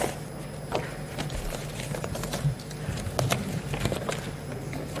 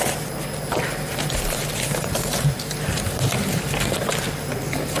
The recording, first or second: first